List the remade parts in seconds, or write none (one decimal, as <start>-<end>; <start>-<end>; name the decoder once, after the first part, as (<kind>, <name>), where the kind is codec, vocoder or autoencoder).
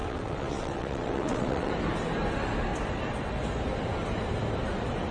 0.0-1.7 (vocoder, WaveNeXt)